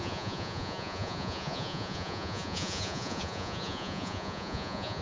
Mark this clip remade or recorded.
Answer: remade